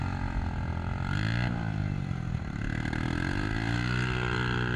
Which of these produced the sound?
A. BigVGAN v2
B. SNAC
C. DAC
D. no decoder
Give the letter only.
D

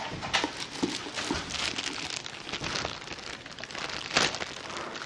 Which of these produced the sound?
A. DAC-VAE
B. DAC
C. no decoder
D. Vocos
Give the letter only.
C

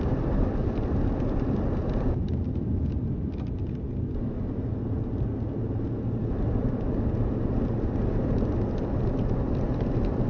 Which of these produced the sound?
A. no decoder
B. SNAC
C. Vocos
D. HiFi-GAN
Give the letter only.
A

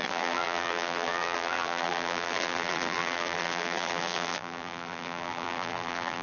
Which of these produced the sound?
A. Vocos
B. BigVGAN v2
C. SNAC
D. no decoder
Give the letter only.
B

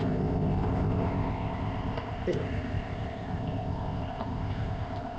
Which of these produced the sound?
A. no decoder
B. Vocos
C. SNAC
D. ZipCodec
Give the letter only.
D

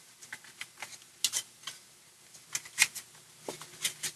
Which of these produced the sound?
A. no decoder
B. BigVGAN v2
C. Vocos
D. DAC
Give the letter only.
A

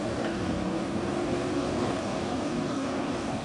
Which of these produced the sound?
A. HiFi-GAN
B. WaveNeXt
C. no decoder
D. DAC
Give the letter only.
D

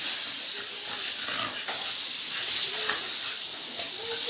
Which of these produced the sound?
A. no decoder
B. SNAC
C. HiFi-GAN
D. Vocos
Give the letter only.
A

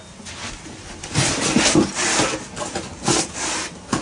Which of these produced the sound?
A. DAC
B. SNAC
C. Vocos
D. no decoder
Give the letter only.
D